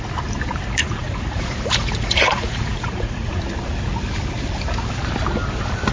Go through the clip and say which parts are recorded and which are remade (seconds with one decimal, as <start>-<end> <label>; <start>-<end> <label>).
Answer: 0.0-0.8 recorded; 0.8-3.4 remade; 3.4-5.9 recorded